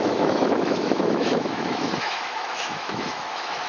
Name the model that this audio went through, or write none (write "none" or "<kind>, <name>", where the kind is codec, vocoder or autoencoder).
autoencoder, DAC-VAE